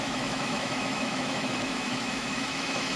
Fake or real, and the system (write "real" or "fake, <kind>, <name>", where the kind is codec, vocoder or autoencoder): fake, autoencoder, DAC-VAE